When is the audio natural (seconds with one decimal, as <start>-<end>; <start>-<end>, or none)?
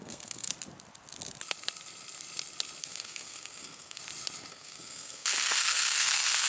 0.5-2.8; 4.0-4.5